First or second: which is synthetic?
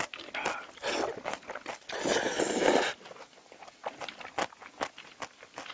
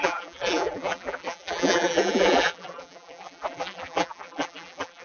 second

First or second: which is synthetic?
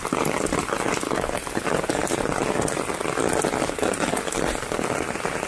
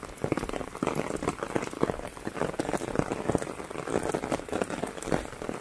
second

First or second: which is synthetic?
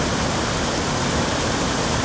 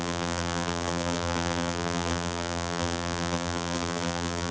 second